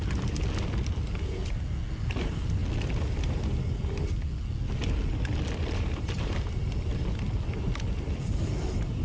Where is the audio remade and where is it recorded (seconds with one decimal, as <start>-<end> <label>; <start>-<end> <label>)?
0.0-5.6 recorded; 5.6-6.2 remade; 6.2-9.0 recorded